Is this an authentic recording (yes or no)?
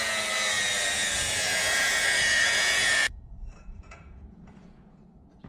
no